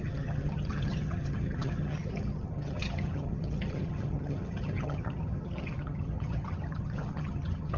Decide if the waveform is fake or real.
fake